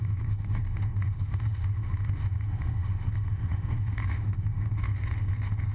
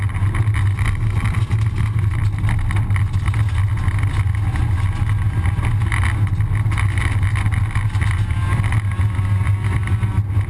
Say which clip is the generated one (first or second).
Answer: first